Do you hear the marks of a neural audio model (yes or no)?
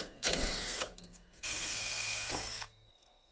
yes